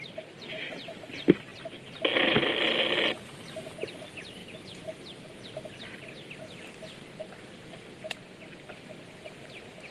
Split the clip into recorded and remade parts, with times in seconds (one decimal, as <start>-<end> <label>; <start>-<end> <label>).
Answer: 0.0-9.9 recorded